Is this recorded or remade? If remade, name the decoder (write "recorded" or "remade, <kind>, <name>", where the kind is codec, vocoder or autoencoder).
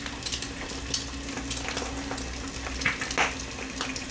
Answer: recorded